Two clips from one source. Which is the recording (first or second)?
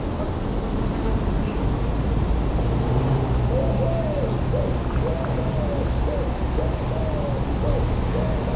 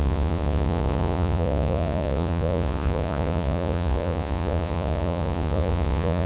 first